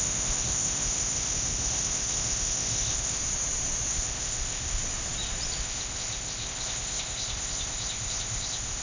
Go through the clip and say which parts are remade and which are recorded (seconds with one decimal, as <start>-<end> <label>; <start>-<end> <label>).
0.0-3.2 remade; 3.2-3.9 recorded; 3.9-4.8 remade; 4.8-5.6 recorded; 5.6-8.8 remade